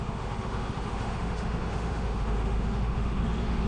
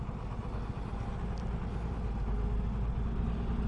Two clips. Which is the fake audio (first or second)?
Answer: first